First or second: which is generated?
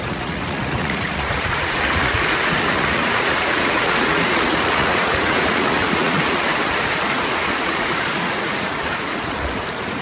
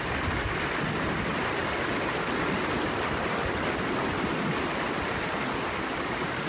first